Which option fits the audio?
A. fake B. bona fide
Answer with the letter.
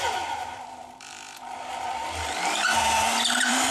A